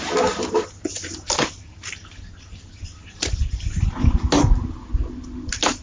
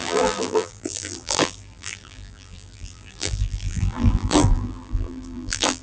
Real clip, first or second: first